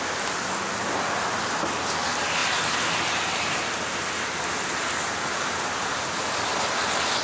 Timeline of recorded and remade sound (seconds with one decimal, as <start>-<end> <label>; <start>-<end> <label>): 0.0-7.2 recorded